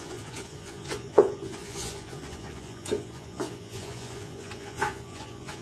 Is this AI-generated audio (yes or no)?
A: yes